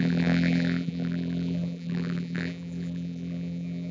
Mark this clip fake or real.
fake